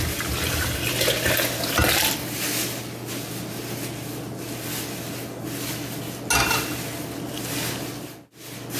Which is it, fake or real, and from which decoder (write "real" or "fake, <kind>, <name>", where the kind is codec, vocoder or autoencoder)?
real